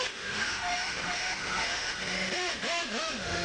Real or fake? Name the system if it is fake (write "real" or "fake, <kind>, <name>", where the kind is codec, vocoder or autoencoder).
fake, autoencoder, DAC-VAE